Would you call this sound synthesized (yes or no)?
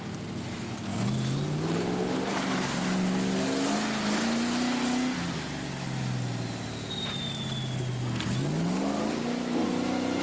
no